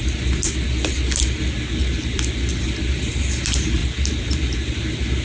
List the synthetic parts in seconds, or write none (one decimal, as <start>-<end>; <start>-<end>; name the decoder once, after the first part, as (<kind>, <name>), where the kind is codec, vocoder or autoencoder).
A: 3.8-4.5 (vocoder, BigVGAN v2)